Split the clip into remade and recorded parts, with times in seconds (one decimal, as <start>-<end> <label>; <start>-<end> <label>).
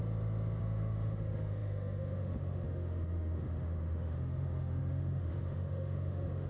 0.0-0.6 recorded; 0.6-6.5 remade